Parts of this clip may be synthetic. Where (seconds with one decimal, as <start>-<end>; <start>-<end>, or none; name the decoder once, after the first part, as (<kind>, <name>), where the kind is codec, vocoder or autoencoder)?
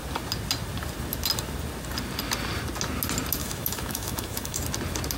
3.4-4.6 (autoencoder, DAC-VAE)